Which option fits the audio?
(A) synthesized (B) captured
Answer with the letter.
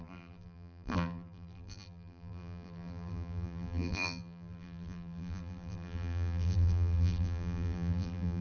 A